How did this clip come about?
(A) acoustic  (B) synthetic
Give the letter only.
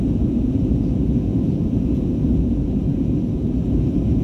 B